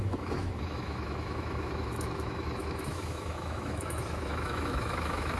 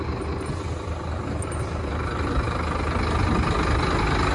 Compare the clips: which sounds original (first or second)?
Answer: second